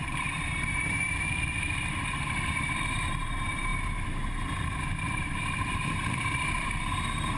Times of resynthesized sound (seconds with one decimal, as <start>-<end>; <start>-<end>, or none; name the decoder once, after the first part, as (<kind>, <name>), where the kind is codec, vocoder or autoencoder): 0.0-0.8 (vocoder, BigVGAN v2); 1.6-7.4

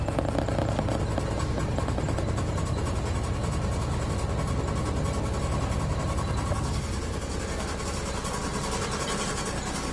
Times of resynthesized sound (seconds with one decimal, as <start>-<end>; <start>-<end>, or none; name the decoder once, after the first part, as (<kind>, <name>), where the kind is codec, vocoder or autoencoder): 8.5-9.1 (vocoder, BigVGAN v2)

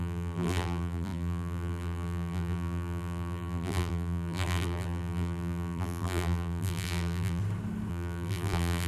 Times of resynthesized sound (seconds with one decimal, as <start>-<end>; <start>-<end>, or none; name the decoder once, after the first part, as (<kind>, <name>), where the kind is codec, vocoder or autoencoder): 0.0-7.4 (vocoder, BigVGAN v2); 7.9-8.9

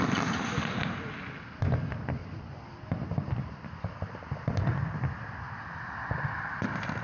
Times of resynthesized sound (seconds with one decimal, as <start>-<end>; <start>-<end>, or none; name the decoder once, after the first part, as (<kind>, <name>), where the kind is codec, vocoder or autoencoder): 2.2-6.4 (vocoder, BigVGAN v2)

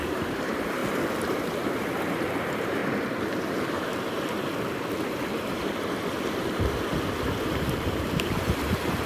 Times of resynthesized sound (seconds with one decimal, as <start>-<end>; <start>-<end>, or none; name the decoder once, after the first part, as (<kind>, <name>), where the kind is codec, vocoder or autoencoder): 0.0-0.8 (vocoder, BigVGAN v2); 1.3-2.8; 3.4-3.9; 7.4-9.1

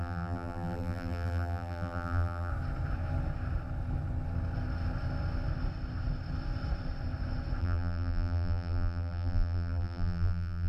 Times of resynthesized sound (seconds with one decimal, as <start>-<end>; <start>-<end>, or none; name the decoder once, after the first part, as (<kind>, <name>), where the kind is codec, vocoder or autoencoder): 0.0-2.5 (vocoder, BigVGAN v2); 7.6-10.7